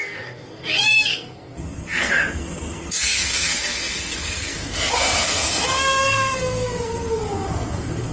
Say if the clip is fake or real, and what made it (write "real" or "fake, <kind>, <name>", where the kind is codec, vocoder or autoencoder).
fake, codec, SNAC